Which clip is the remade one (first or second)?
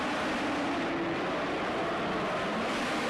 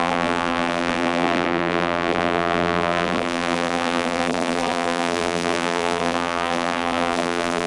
second